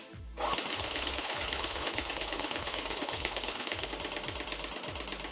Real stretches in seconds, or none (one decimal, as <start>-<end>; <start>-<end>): 0.0-0.7; 3.9-5.3